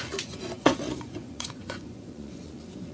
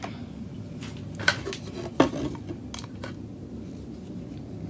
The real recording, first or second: second